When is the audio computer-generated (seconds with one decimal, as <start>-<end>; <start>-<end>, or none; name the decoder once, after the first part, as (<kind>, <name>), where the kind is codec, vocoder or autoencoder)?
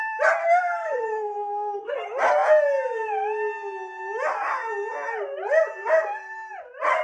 0.4-1.9 (codec, SNAC)